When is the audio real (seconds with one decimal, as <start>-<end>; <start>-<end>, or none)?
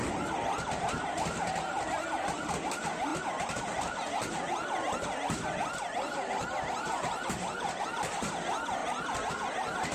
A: 0.7-8.8; 9.3-9.9